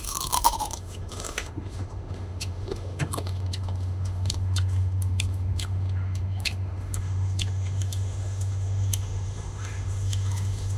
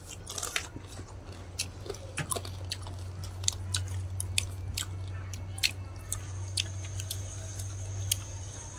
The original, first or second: second